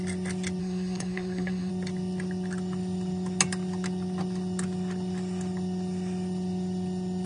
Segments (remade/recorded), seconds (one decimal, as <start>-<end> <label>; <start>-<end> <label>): 0.0-0.6 recorded; 0.6-1.7 remade; 1.7-7.3 recorded